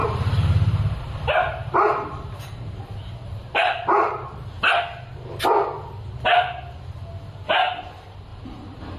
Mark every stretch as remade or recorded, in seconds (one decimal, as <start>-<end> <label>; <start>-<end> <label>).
0.0-4.6 remade; 4.6-8.3 recorded; 8.3-9.0 remade